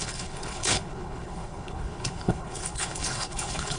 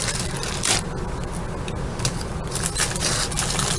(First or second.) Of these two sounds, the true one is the second